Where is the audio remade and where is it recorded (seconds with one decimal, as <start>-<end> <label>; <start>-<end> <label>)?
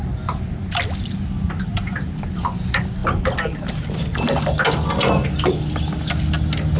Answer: 0.0-1.7 recorded; 1.7-2.3 remade; 2.3-6.8 recorded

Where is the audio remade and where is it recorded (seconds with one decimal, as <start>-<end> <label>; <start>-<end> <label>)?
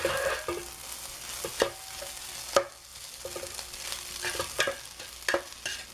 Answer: 0.0-5.9 recorded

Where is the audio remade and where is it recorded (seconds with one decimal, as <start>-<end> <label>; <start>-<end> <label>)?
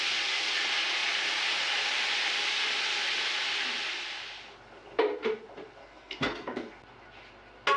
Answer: 0.0-5.8 recorded; 5.8-6.7 remade; 6.7-7.8 recorded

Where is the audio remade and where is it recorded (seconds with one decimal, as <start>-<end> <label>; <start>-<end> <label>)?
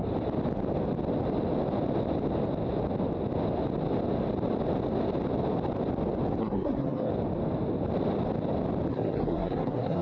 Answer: 0.0-6.4 recorded; 6.4-7.1 remade; 7.1-8.9 recorded; 8.9-10.0 remade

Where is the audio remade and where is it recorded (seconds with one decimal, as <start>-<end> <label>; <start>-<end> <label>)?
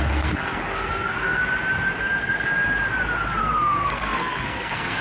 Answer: 0.0-1.4 remade; 1.4-2.0 recorded; 2.0-2.5 remade; 2.5-3.4 recorded; 3.4-5.0 remade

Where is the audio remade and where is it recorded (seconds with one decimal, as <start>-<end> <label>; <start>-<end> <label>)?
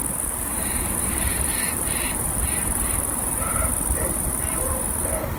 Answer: 0.0-0.5 recorded; 0.5-3.7 remade; 3.7-5.4 recorded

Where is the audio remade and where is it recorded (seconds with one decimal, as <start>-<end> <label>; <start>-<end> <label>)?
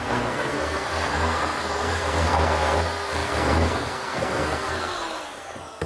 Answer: 0.0-5.9 remade